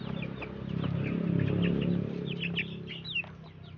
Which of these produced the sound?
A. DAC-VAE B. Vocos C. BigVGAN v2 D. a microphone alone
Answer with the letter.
D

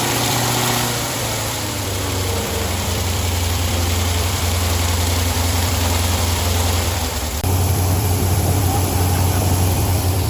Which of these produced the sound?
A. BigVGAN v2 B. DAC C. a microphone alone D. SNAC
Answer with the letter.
A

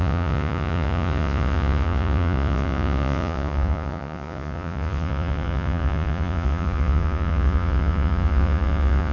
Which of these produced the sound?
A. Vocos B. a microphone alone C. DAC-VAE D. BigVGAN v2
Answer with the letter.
A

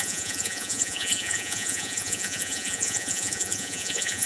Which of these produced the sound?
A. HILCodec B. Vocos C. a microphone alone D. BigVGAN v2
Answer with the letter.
B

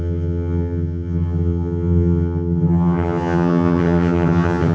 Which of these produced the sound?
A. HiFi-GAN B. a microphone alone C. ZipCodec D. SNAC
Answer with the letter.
A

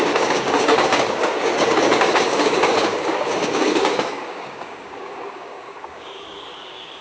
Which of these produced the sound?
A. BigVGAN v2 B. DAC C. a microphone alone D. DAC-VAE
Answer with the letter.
B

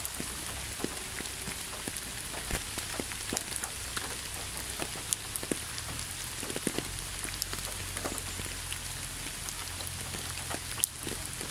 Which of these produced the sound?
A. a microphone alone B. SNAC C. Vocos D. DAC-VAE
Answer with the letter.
A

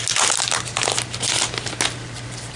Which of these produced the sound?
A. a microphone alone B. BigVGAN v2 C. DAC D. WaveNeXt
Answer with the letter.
A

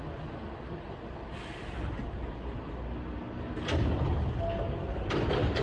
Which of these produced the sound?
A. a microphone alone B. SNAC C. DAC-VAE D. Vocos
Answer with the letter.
A